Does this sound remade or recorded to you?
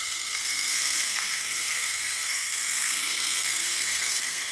remade